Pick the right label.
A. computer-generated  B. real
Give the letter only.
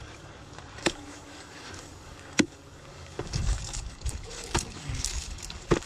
A